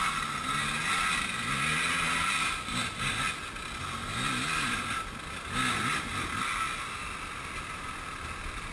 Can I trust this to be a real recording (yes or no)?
yes